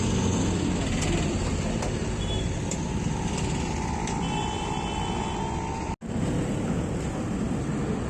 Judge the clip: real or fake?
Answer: real